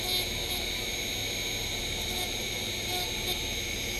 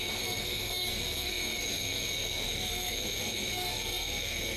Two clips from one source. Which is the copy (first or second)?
second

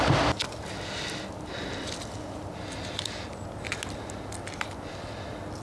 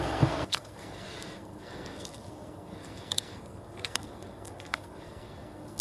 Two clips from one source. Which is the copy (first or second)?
second